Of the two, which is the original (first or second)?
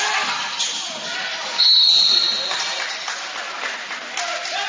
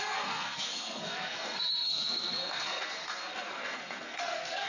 first